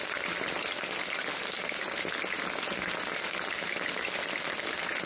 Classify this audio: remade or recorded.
recorded